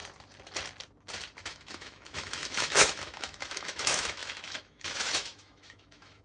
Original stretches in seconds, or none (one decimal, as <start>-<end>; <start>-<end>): 0.0-1.4